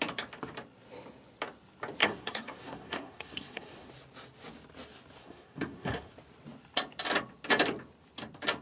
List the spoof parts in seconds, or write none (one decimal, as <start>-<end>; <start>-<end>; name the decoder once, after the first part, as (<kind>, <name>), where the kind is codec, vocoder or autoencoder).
2.0-3.9 (codec, SNAC); 5.2-6.1